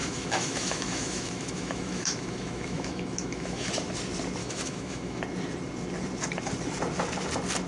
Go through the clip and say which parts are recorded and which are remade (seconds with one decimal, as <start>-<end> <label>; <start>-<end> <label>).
0.0-3.7 remade; 3.7-4.4 recorded; 4.4-5.2 remade; 5.2-7.7 recorded